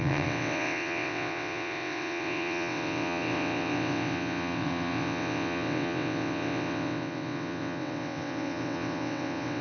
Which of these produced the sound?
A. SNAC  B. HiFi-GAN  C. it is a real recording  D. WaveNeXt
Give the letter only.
D